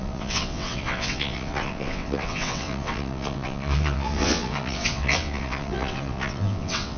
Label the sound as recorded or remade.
remade